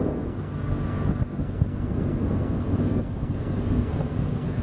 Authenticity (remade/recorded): remade